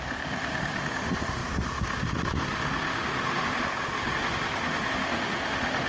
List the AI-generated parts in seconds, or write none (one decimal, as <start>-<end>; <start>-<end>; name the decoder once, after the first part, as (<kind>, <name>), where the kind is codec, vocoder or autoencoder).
0.0-5.9 (autoencoder, DAC-VAE)